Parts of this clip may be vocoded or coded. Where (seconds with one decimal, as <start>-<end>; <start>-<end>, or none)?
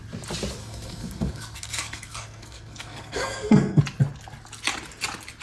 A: 0.6-3.8